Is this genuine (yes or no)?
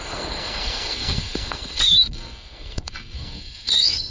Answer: no